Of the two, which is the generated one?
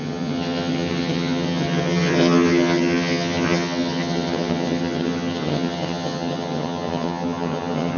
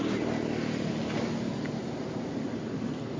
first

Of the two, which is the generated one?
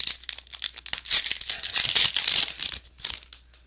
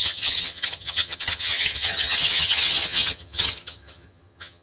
second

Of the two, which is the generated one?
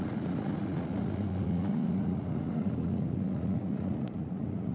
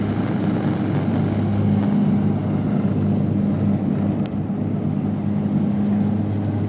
first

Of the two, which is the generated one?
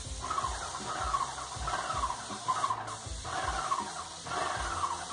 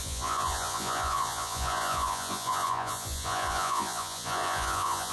second